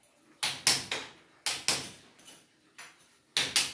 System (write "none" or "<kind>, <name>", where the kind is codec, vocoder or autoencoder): none